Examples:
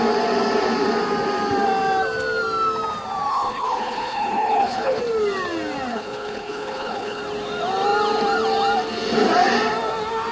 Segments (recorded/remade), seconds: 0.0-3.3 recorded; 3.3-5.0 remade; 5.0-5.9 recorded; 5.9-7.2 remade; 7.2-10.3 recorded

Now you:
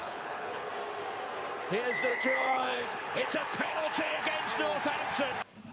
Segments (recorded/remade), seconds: 0.0-0.7 remade; 0.7-2.1 recorded; 2.1-4.2 remade; 4.2-5.7 recorded